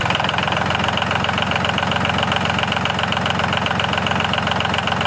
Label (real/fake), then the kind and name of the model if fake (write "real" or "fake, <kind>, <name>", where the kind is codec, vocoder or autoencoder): real